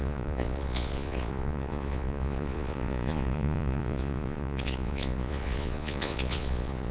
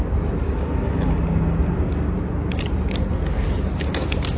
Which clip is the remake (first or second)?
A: first